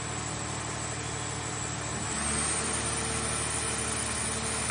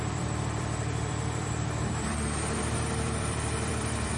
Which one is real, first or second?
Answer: first